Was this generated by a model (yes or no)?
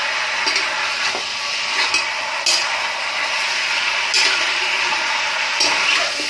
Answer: no